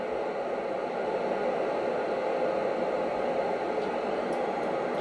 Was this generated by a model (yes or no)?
no